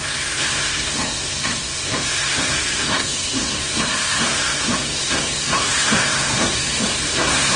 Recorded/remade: remade